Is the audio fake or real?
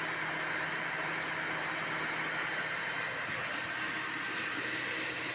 real